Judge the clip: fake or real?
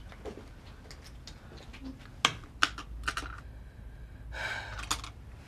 real